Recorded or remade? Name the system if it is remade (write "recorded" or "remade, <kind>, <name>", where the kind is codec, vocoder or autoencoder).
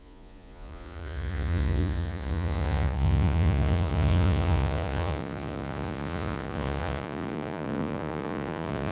remade, vocoder, Vocos